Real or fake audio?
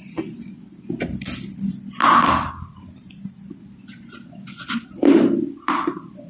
real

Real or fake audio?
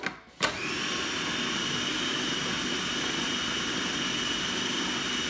real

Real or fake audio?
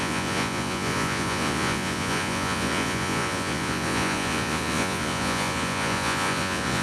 fake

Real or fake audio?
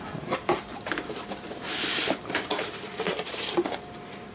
fake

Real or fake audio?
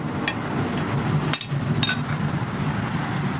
real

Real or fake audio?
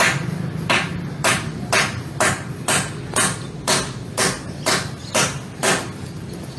real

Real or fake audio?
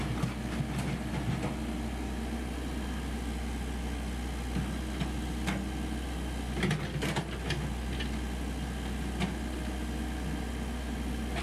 real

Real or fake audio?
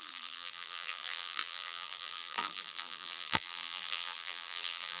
fake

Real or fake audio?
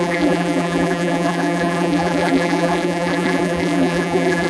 fake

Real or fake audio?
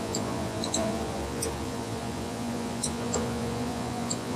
fake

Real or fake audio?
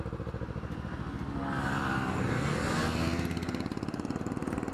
real